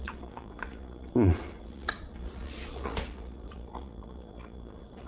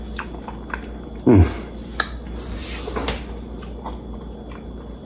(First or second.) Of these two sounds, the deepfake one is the first